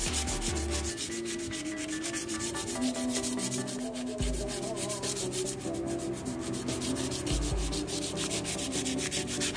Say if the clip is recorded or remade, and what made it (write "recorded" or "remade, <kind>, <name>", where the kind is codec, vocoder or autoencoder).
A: recorded